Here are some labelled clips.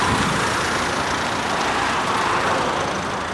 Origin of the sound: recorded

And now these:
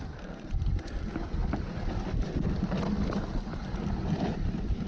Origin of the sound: remade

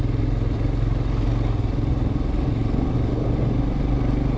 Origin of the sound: recorded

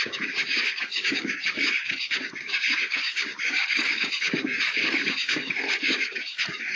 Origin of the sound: remade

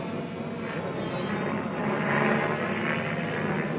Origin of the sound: recorded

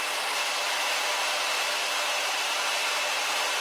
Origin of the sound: recorded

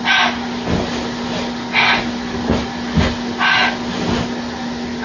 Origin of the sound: recorded